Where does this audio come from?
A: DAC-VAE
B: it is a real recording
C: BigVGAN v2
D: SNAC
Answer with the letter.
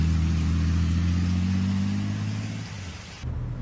B